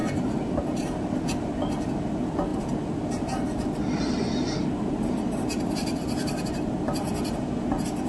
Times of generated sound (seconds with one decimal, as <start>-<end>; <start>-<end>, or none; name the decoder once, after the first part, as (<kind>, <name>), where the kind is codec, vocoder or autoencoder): none